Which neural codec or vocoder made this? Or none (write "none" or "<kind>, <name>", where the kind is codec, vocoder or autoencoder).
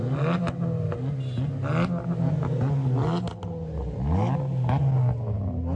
none